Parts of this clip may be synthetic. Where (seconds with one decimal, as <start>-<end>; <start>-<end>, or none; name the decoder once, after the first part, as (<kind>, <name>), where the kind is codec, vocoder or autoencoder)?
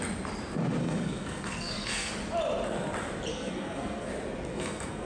0.8-2.1 (codec, SNAC); 3.3-4.1; 4.5-5.1